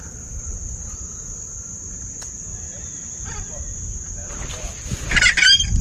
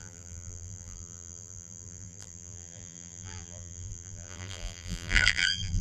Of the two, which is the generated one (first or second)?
second